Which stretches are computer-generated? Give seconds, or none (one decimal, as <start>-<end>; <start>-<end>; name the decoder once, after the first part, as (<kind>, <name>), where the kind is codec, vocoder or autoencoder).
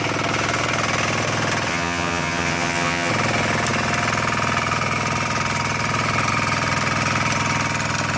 1.7-3.1 (vocoder, HiFi-GAN)